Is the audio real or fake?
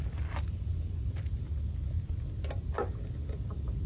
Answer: real